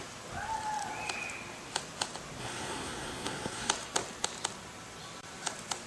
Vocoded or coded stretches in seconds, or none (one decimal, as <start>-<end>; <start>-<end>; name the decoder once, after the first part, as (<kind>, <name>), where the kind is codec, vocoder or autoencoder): 2.4-3.7 (codec, SNAC)